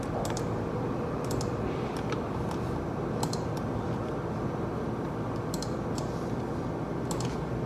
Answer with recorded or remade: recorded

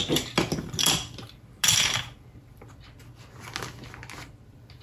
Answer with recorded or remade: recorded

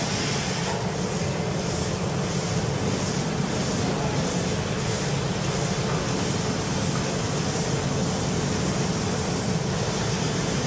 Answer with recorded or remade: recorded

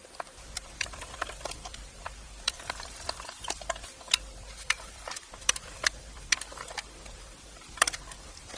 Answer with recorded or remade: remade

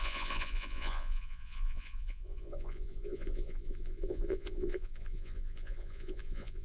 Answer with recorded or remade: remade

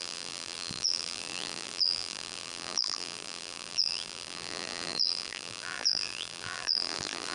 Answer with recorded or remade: remade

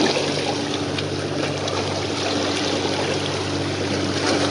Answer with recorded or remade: recorded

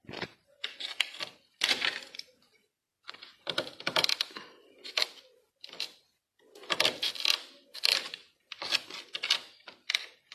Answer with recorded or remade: recorded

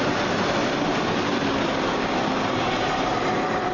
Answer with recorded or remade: recorded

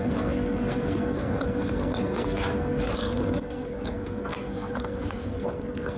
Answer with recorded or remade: remade